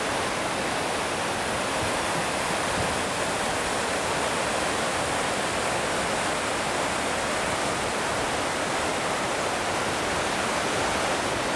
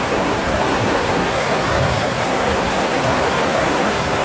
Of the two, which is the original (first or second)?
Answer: first